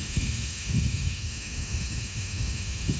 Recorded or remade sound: remade